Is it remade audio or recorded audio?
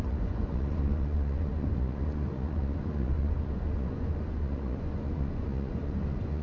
remade